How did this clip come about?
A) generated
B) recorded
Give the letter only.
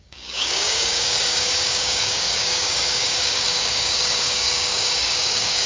A